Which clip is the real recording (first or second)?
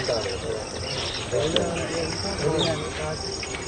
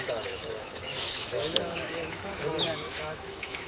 first